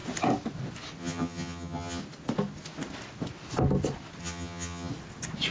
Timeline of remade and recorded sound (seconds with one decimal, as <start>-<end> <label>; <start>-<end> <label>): 0.0-1.0 recorded; 1.0-2.0 remade; 2.0-4.2 recorded; 4.2-4.9 remade; 4.9-5.5 recorded